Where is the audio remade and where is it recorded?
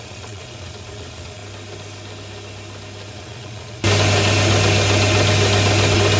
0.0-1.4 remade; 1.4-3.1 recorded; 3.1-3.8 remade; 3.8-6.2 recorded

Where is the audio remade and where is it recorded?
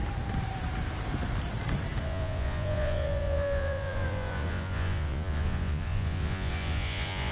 0.0-2.0 recorded; 2.0-7.3 remade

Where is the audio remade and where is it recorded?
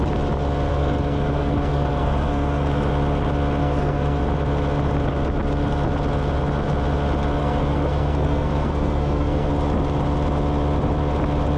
0.0-0.7 recorded; 0.7-2.9 remade; 2.9-3.6 recorded; 3.6-4.2 remade; 4.2-7.4 recorded; 7.4-9.5 remade; 9.5-11.6 recorded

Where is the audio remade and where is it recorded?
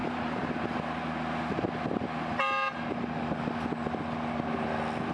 0.0-0.6 remade; 0.6-5.1 recorded